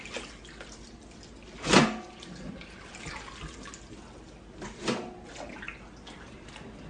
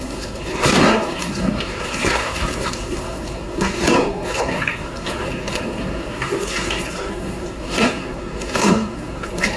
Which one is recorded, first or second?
first